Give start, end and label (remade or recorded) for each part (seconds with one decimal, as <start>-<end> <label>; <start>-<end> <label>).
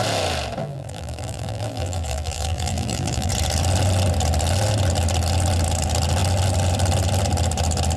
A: 0.0-0.6 recorded; 0.6-3.3 remade; 3.3-8.0 recorded